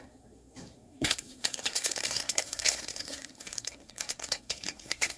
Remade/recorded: remade